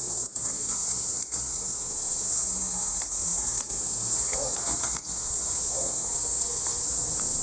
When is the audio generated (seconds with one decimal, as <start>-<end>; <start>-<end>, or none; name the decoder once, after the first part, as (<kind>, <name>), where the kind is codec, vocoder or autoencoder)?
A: 0.0-7.4 (codec, SNAC)